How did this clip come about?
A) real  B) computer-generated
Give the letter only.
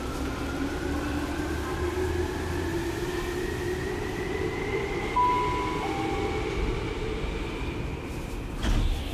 A